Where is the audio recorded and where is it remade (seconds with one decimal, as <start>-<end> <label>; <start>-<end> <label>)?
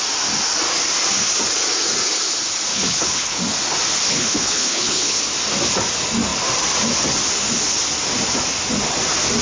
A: 0.0-2.7 recorded; 2.7-3.4 remade; 3.4-4.1 recorded; 4.1-5.2 remade; 5.2-9.4 recorded